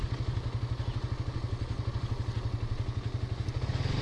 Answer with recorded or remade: recorded